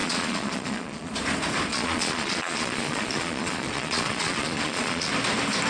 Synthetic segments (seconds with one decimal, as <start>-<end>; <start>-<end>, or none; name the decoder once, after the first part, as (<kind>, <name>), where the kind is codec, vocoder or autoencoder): 0.0-1.1 (vocoder, Vocos); 1.7-5.1